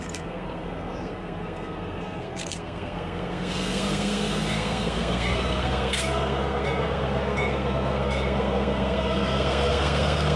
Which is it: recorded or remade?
remade